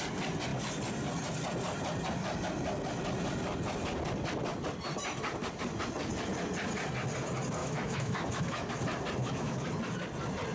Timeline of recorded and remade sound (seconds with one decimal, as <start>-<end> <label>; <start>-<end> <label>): 0.0-7.6 recorded; 7.6-8.7 remade; 8.7-9.2 recorded; 9.2-9.7 remade; 9.7-10.5 recorded